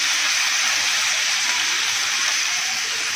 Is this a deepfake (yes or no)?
yes